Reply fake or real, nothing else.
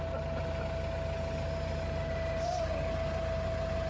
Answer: real